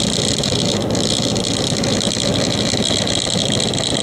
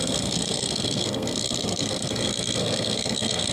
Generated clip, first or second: second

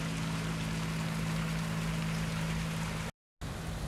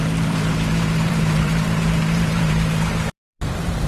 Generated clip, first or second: second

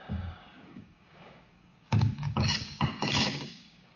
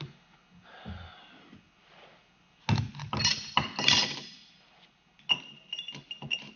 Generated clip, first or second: first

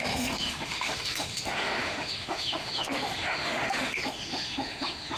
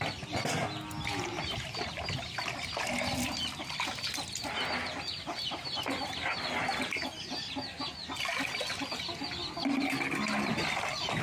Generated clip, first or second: first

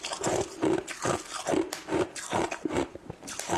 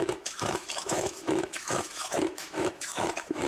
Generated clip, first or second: second